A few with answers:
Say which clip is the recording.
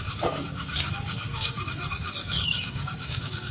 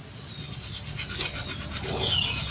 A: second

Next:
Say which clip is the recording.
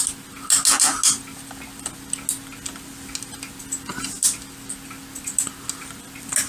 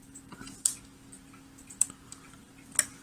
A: first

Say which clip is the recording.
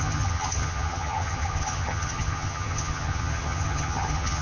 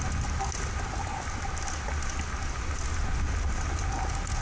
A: second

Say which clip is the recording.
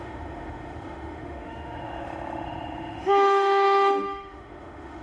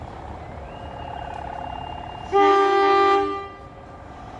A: second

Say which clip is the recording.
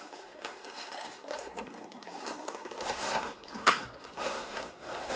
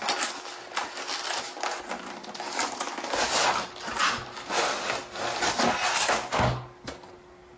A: second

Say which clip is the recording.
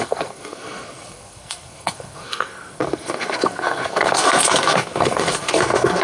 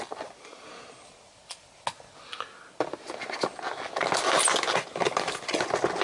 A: second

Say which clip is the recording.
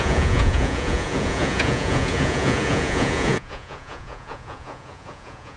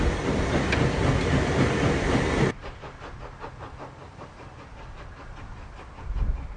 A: second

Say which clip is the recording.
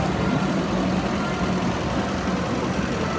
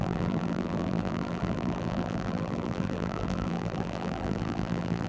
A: first